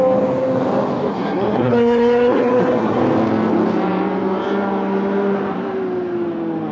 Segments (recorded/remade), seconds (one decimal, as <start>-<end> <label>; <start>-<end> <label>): 0.0-1.1 recorded; 1.1-3.0 remade; 3.0-6.7 recorded